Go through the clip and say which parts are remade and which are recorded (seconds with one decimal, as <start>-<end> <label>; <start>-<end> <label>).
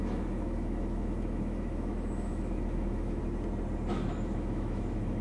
0.0-3.2 remade; 3.2-3.9 recorded; 3.9-5.2 remade